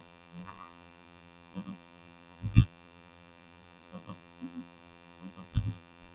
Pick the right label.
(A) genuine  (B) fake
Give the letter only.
B